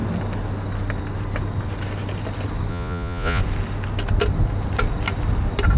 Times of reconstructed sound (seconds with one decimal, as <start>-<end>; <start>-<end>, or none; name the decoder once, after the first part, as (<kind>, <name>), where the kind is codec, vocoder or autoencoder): 2.7-3.4 (vocoder, Vocos)